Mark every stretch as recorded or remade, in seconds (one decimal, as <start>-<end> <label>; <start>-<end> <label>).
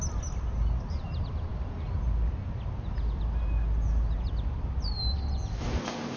0.0-6.2 recorded